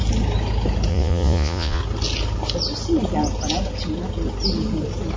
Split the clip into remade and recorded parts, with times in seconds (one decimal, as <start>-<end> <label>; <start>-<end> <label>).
0.0-0.9 recorded; 0.9-1.8 remade; 1.8-5.2 recorded